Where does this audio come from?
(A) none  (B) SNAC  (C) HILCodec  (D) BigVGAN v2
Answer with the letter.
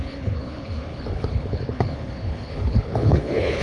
C